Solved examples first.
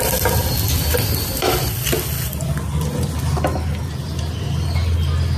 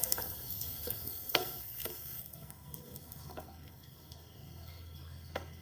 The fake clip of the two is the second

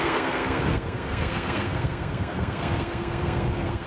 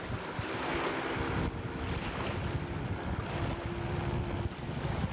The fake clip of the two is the first